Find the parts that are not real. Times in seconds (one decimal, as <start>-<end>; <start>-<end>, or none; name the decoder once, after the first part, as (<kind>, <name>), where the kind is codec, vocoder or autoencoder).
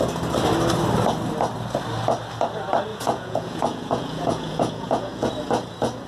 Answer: 2.9-5.3 (vocoder, Vocos)